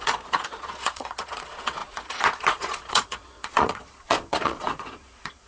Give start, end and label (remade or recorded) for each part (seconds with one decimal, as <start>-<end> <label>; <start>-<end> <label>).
0.0-5.5 remade